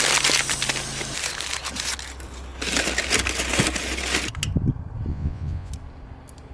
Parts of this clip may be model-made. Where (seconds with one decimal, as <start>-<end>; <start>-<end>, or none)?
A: 5.1-5.7